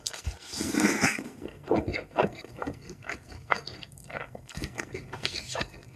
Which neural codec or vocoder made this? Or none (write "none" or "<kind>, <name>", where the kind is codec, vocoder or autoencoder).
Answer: codec, SNAC